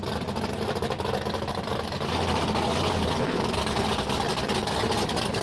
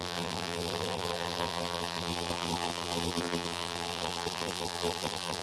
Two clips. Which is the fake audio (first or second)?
second